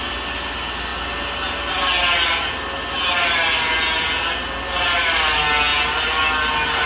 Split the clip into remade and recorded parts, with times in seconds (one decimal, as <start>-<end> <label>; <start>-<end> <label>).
0.0-6.9 recorded